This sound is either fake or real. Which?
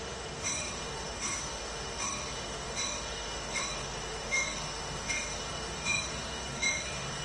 fake